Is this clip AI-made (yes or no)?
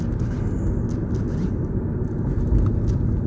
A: no